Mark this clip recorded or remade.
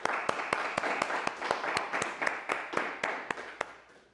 recorded